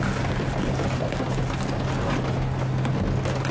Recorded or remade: recorded